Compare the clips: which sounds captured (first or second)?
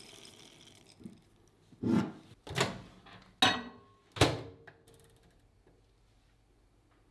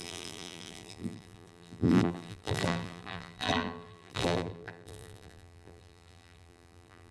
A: first